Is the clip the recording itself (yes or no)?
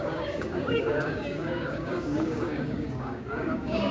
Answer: no